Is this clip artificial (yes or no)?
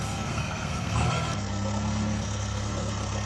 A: yes